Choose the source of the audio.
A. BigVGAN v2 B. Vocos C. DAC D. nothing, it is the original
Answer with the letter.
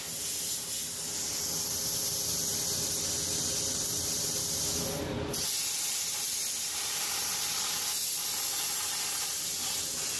D